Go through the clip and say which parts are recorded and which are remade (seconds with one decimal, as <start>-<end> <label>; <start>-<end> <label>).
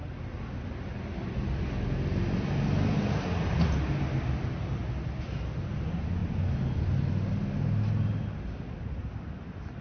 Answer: 0.0-9.8 recorded